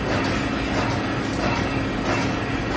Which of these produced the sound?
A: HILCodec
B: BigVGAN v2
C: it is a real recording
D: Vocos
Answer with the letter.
C